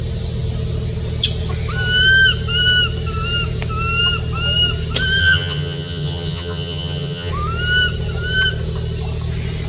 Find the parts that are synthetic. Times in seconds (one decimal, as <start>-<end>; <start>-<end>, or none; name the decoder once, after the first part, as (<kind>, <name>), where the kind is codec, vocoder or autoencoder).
5.2-7.3 (vocoder, HiFi-GAN)